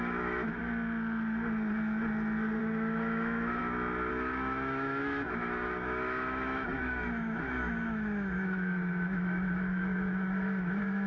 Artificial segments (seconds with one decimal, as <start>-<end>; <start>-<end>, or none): 0.0-0.6; 2.6-3.6; 4.1-11.1